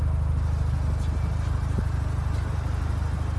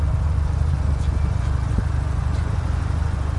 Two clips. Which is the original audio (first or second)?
first